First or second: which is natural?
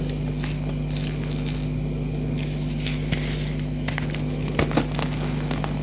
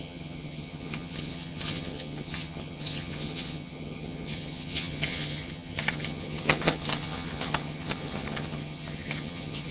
first